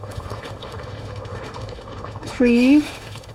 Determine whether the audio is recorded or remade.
remade